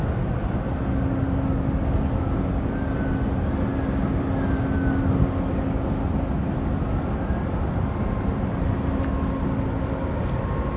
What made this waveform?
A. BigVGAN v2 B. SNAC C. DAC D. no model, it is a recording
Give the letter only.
D